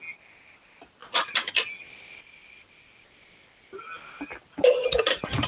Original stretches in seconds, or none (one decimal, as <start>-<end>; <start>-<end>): 0.0-5.5